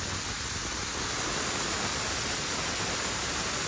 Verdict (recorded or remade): recorded